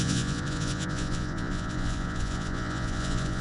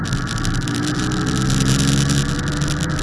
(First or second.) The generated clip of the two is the first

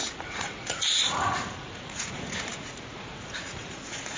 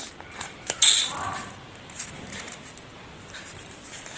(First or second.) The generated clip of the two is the first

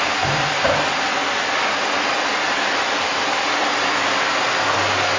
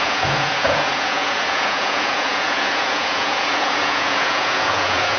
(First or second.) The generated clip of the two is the second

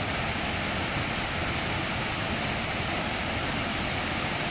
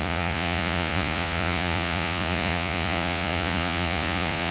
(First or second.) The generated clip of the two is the second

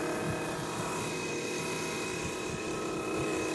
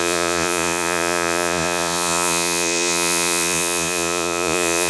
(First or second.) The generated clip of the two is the second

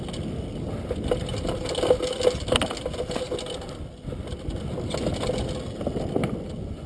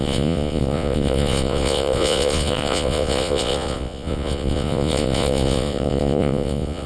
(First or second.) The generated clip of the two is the second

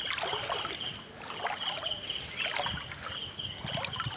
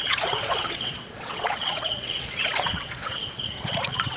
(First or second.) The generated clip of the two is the second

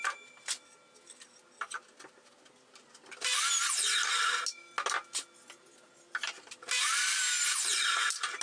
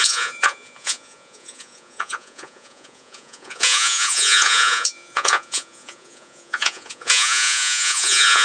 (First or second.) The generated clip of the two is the second